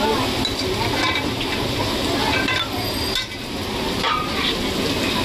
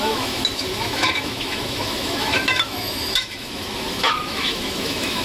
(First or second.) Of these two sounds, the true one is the first